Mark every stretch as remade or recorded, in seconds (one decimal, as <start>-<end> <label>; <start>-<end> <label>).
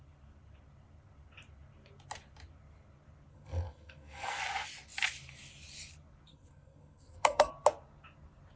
0.0-3.3 recorded; 3.3-4.4 remade; 4.4-6.3 recorded; 6.3-7.5 remade; 7.5-8.6 recorded